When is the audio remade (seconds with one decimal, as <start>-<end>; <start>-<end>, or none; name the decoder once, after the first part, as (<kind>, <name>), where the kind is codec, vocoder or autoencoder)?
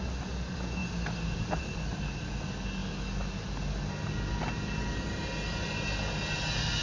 0.8-1.6 (vocoder, BigVGAN v2)